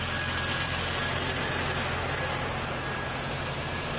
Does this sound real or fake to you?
real